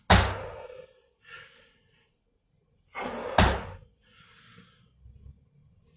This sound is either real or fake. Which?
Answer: real